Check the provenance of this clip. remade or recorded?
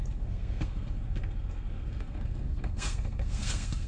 remade